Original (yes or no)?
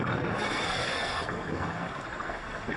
no